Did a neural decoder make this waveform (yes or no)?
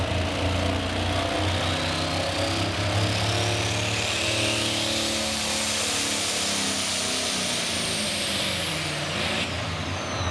no